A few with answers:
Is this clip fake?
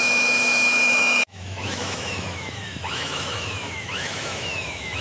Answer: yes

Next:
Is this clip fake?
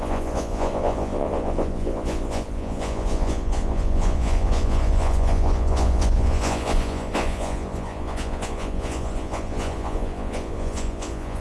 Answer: yes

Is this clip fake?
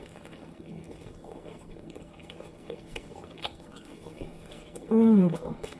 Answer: yes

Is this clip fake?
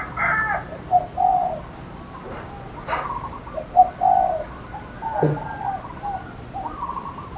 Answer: no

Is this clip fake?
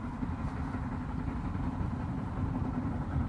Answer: yes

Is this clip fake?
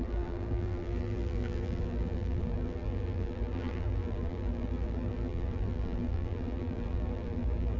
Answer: yes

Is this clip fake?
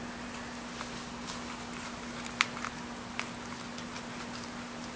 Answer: no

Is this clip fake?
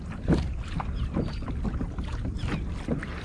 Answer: no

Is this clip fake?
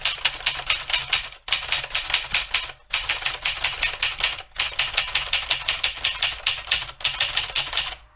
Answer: no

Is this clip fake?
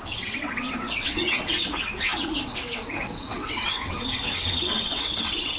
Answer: yes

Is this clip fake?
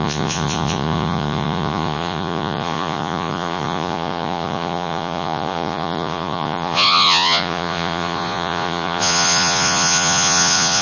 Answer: yes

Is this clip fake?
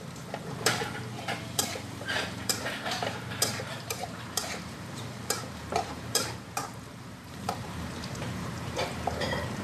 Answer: yes